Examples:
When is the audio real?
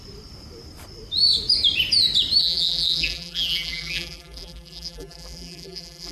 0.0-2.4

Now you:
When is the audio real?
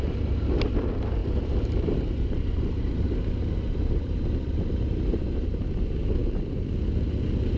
0.0-1.2; 5.6-7.6